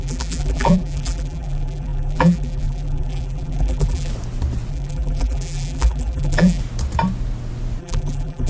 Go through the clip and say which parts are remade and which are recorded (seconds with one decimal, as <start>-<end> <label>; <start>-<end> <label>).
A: 0.0-4.1 remade; 4.1-4.7 recorded; 4.7-6.6 remade; 6.6-7.8 recorded; 7.8-8.5 remade